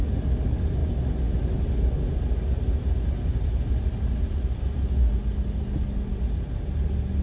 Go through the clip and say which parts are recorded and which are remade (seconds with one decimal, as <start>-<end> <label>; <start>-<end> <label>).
0.0-7.2 recorded